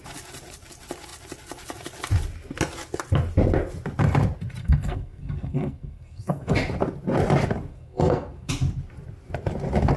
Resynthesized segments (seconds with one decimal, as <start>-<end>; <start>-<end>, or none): 4.6-6.5; 7.7-8.5